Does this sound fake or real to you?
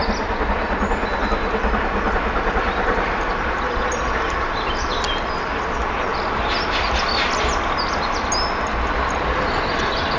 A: real